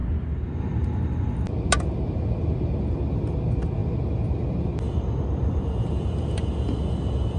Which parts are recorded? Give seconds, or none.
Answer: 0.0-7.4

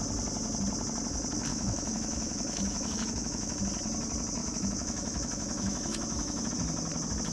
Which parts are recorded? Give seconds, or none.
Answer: 0.0-1.5; 3.6-4.4; 6.5-7.3